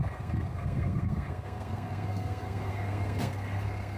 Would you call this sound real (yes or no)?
no